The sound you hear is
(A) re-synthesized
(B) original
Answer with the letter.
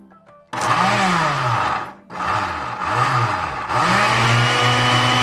B